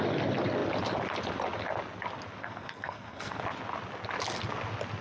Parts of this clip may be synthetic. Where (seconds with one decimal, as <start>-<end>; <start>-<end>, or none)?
2.4-3.4